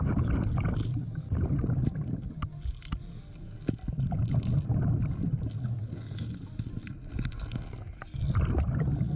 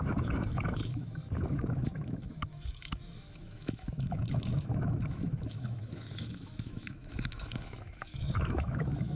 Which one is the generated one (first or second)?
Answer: second